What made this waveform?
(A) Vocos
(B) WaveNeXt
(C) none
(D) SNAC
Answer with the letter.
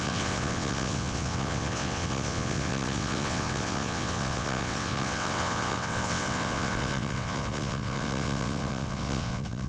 B